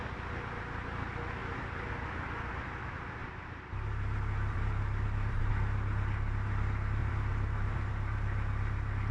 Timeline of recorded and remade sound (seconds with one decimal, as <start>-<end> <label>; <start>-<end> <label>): 0.0-1.4 recorded; 1.4-1.9 remade; 1.9-3.2 recorded; 3.2-5.5 remade; 5.5-7.0 recorded; 7.0-9.1 remade